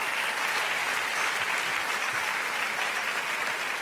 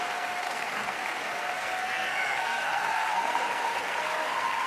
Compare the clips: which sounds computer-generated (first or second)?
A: second